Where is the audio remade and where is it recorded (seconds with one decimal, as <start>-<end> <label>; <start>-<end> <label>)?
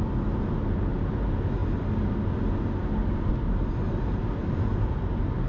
0.0-5.5 recorded